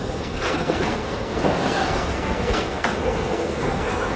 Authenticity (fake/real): fake